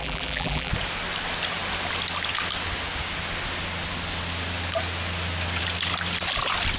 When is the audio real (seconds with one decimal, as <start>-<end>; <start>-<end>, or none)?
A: 0.7-6.8